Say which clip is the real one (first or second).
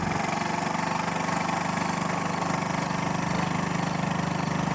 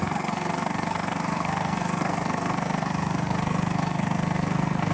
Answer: first